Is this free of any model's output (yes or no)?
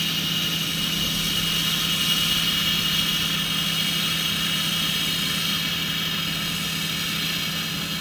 yes